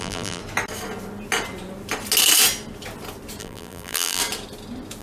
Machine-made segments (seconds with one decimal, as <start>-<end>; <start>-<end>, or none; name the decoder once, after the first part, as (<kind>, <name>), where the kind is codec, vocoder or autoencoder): 0.0-0.4 (vocoder, BigVGAN v2); 3.4-4.2